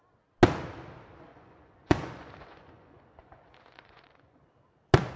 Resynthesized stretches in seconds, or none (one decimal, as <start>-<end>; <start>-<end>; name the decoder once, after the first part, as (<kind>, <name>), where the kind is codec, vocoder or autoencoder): 1.3-4.4 (vocoder, Vocos)

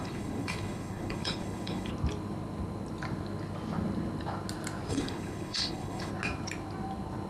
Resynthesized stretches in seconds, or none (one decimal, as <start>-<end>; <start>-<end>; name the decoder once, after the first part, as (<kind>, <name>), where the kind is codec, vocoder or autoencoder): 0.0-1.9 (codec, HILCodec); 4.9-6.1